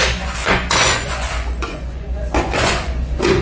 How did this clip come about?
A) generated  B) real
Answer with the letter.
A